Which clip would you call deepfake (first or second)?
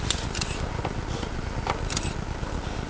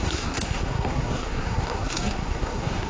second